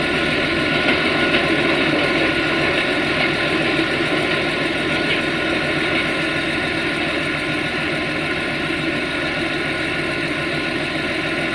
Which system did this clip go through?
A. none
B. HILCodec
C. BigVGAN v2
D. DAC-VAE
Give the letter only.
A